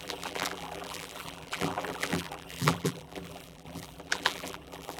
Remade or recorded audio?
remade